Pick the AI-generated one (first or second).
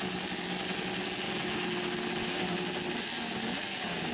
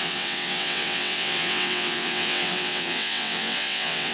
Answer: second